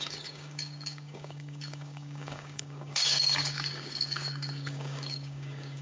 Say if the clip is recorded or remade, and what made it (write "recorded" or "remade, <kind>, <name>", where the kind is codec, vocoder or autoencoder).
remade, codec, DAC